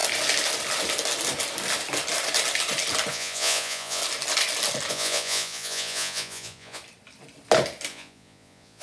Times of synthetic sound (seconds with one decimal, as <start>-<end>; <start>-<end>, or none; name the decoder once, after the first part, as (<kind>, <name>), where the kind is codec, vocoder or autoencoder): 3.1-4.0 (vocoder, Vocos); 4.9-6.8; 7.9-8.8